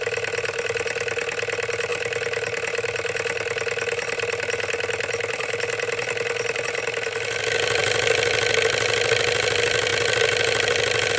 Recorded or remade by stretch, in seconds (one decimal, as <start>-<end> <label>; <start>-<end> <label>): 0.0-11.2 recorded